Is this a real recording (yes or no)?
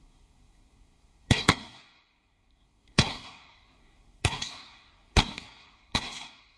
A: no